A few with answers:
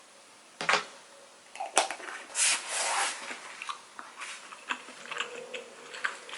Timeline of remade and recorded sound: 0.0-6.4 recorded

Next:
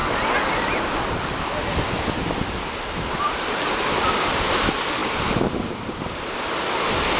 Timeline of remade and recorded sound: 0.0-7.2 recorded

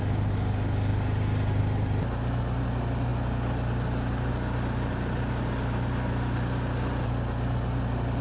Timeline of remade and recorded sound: 0.0-8.2 recorded